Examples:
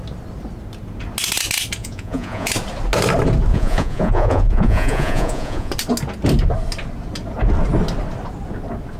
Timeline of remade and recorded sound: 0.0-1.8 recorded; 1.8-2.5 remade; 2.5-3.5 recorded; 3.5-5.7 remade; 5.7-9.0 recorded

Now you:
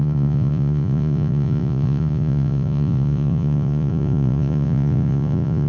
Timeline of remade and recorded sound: 0.0-5.7 remade